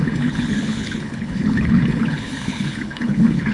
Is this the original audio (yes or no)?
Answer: no